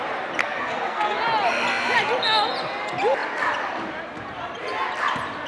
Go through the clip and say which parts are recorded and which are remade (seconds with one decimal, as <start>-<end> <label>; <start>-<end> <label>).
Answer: 0.0-0.4 recorded; 0.4-1.2 remade; 1.2-5.5 recorded